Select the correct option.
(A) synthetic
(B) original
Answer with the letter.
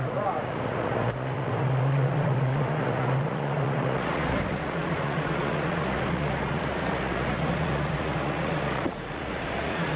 A